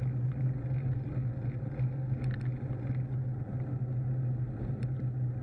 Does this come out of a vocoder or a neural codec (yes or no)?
no